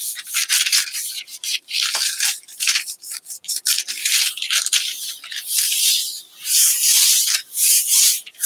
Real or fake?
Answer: fake